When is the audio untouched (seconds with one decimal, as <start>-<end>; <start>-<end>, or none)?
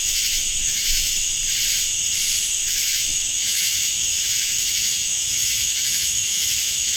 1.3-2.5